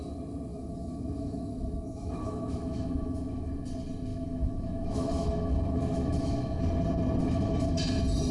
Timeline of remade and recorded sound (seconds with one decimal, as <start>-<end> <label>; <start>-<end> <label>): 0.0-0.5 recorded; 0.5-3.5 remade; 3.5-4.1 recorded; 4.1-6.6 remade; 6.6-7.2 recorded; 7.2-7.8 remade; 7.8-8.3 recorded